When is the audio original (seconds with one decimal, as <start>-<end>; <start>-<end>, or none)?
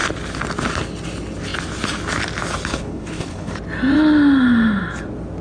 0.0-2.7; 3.5-5.4